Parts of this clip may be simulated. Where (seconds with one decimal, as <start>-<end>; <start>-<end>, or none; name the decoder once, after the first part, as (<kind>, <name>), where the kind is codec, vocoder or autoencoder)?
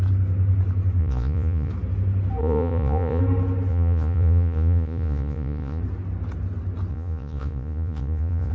1.0-1.7 (vocoder, Vocos); 2.4-3.2; 3.7-5.8; 6.9-8.5